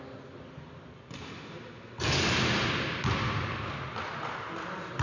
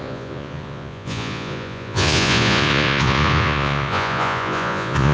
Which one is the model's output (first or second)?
second